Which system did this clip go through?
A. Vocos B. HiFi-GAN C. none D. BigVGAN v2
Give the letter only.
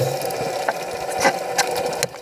C